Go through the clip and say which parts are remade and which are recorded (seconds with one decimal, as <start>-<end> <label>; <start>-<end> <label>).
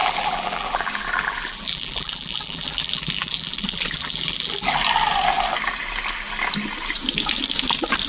0.0-4.7 remade; 4.7-8.1 recorded